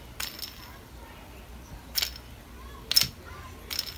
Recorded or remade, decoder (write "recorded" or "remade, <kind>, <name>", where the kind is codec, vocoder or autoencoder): recorded